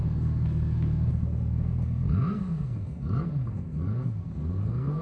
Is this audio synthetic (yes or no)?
yes